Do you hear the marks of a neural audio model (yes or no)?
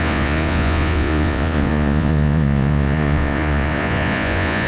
yes